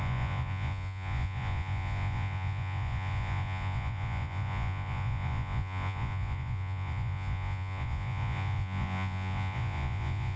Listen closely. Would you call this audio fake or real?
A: fake